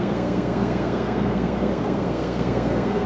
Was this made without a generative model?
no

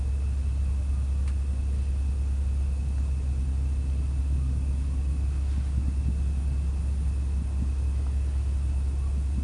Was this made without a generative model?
yes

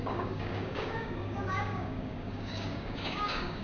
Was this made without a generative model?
no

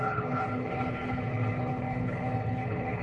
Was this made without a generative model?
no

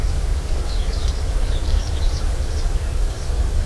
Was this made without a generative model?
no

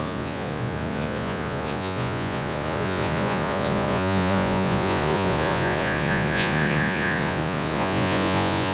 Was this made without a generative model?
no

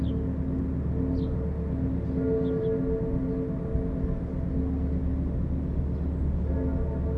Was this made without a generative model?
yes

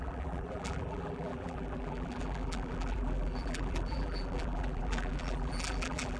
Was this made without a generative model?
no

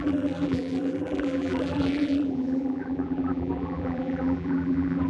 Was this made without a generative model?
no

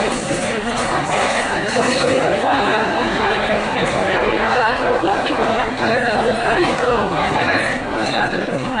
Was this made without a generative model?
no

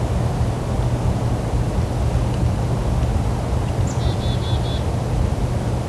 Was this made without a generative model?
yes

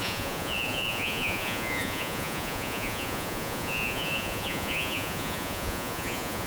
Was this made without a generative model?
no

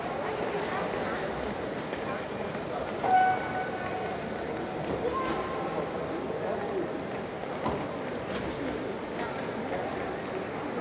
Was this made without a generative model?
yes